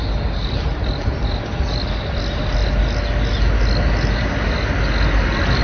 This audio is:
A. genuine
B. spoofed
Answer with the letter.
A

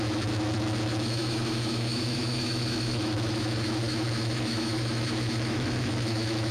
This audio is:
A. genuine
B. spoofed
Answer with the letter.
B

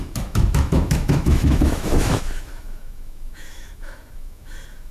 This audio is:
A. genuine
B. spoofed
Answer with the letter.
B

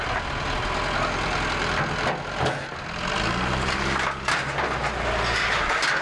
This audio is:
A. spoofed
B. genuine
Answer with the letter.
B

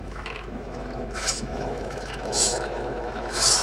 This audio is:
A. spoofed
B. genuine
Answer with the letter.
A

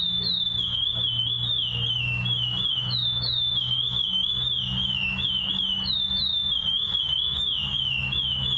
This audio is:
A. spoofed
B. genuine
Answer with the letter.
A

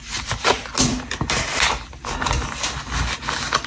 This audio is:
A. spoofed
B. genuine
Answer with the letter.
B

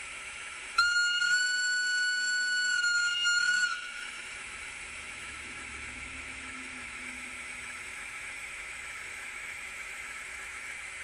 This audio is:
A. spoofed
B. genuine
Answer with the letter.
A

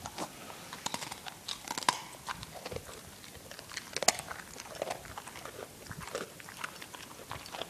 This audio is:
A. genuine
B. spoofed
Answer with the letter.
A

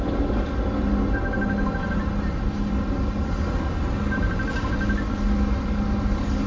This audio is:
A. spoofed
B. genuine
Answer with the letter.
B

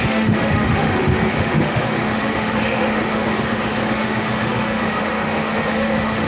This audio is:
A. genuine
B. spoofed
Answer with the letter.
B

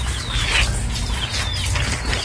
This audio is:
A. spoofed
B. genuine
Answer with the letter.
B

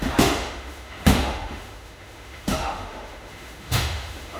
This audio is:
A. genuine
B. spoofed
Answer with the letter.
B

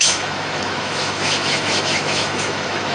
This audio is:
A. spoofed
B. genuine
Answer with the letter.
A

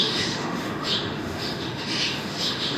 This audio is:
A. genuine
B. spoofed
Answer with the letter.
B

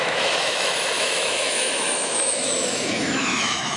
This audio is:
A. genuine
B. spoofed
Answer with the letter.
B